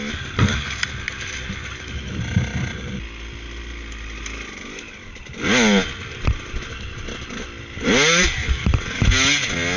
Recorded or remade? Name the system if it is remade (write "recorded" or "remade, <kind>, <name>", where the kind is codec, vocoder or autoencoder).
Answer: recorded